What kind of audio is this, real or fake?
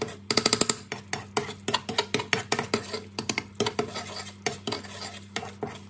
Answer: real